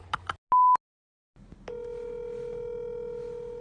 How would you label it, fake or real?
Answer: real